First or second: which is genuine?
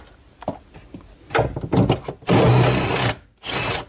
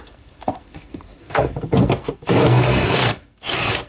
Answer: first